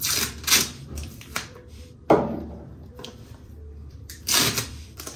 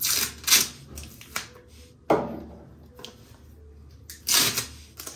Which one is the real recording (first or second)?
second